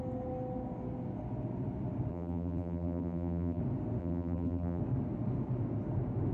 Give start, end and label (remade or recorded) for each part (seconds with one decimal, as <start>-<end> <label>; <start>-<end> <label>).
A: 0.0-2.1 recorded; 2.1-3.6 remade; 3.6-4.0 recorded; 4.0-4.8 remade; 4.8-6.3 recorded